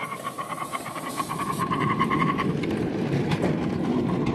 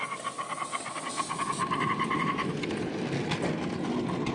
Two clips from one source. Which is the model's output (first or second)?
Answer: first